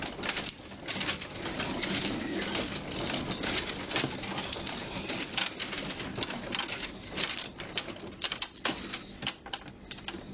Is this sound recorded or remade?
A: recorded